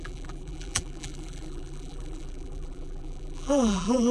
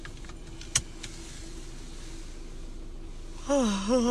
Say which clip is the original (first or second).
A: second